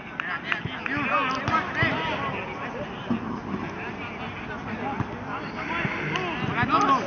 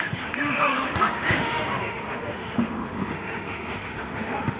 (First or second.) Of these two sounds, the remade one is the second